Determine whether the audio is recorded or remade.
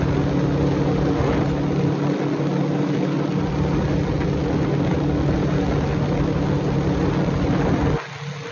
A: recorded